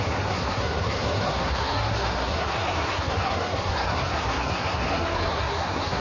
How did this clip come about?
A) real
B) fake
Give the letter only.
B